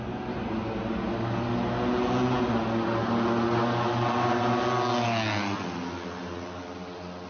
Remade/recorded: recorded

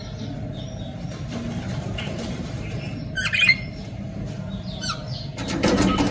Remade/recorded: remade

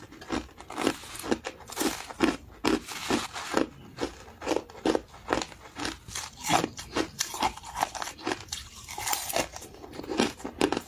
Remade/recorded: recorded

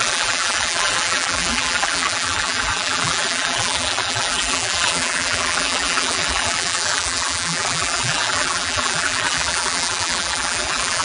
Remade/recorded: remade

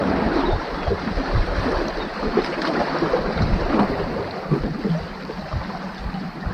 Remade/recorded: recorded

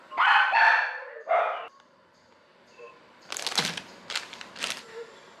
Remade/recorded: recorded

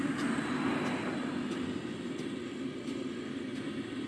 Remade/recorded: recorded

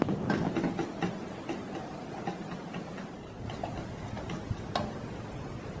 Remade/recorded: recorded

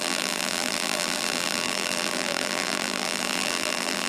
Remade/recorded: remade